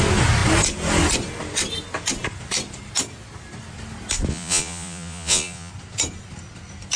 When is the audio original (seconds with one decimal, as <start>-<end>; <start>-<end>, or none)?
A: 0.0-4.3; 5.7-7.0